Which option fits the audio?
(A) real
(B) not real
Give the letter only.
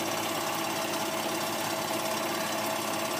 A